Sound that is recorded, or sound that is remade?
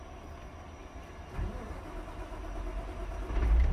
recorded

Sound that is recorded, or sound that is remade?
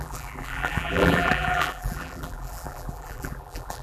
remade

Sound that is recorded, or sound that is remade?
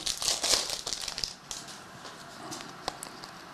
recorded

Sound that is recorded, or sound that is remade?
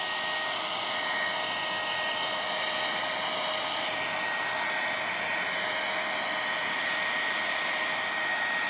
recorded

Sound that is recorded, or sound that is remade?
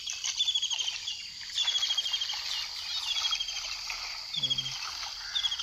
recorded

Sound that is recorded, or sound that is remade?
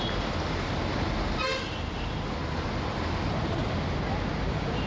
recorded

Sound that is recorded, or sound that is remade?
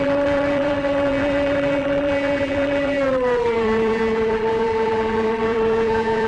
remade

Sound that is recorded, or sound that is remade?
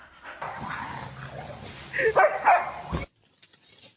recorded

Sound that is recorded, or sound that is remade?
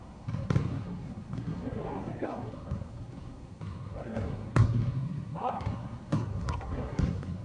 remade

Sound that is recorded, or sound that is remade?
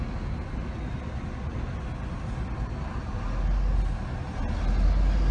recorded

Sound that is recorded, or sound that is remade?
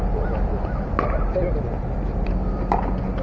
recorded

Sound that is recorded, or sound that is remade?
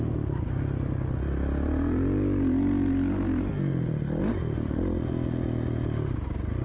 recorded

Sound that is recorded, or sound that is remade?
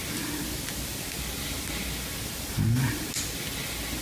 recorded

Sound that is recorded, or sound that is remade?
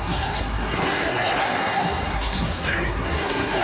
remade